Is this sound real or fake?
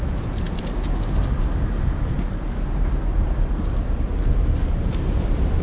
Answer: real